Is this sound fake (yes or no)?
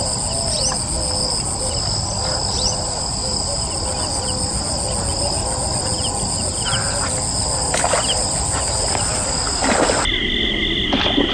no